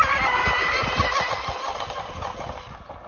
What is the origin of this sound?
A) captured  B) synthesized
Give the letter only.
A